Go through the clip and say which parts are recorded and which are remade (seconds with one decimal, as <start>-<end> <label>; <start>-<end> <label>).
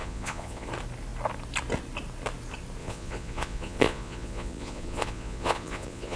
0.0-0.7 remade; 0.7-2.8 recorded; 2.8-6.2 remade